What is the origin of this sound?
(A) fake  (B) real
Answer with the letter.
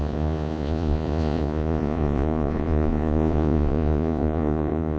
A